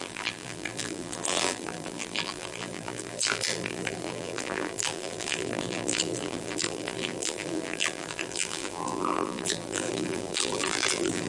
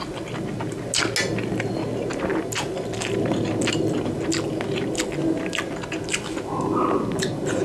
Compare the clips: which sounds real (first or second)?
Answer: second